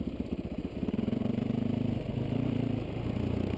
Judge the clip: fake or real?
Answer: real